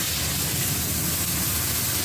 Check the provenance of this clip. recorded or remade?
recorded